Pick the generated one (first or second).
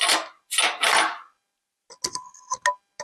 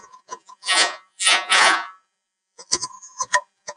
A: second